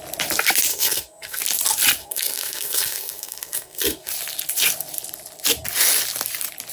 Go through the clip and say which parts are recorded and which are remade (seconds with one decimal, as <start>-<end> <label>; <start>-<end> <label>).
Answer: 0.0-0.7 recorded; 0.7-1.4 remade; 1.4-2.0 recorded; 2.0-4.1 remade; 4.1-6.7 recorded